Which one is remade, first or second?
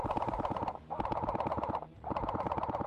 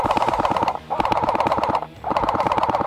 second